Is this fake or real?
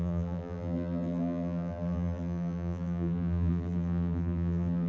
fake